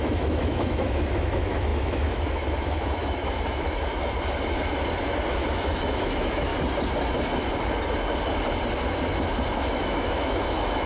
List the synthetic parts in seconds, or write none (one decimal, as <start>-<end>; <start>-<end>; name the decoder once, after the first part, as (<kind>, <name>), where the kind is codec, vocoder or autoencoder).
0.0-3.9 (autoencoder, DAC-VAE); 5.5-6.5; 9.7-10.9